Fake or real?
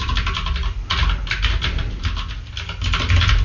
real